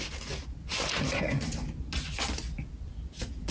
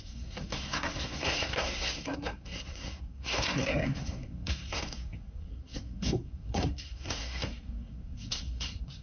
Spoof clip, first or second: second